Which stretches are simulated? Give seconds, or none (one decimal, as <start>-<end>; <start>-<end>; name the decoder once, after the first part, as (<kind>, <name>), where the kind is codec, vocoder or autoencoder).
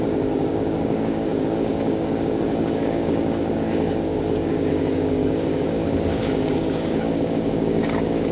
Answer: 0.0-8.3 (codec, DAC)